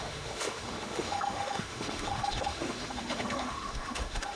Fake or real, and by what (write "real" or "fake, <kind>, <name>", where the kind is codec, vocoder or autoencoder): fake, autoencoder, DAC-VAE